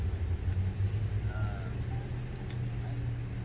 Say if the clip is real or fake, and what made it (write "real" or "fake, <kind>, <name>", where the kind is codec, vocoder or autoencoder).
real